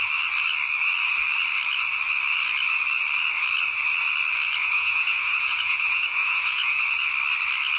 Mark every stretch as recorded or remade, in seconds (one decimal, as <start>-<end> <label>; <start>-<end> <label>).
0.0-4.6 recorded; 4.6-6.8 remade; 6.8-7.8 recorded